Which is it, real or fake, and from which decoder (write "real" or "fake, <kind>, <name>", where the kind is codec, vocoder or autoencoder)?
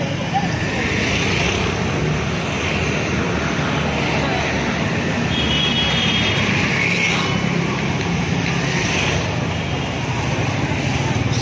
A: real